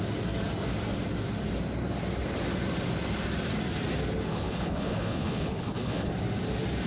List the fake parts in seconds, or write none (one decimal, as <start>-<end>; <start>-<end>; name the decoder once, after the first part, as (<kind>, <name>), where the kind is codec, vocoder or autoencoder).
4.3-6.1 (codec, HILCodec)